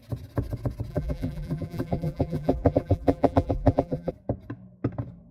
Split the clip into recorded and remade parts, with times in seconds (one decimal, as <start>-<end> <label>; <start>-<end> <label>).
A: 0.0-0.9 recorded; 0.9-4.1 remade; 4.1-5.3 recorded